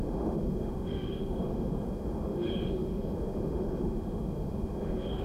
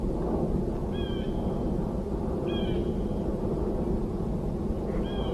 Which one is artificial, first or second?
first